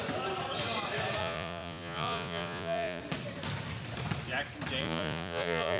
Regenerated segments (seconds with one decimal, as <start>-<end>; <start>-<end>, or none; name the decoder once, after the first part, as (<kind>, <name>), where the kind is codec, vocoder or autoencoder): 1.2-3.0 (vocoder, Vocos); 4.8-5.8